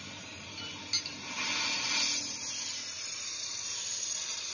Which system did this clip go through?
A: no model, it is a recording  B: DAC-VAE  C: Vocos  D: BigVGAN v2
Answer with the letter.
A